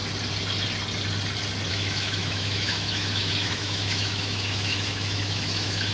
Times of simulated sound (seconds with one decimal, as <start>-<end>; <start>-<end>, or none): 1.7-5.9